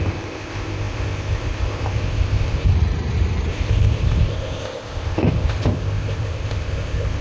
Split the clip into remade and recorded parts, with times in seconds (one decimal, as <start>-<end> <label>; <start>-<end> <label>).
0.0-2.7 remade; 2.7-3.5 recorded; 3.5-7.2 remade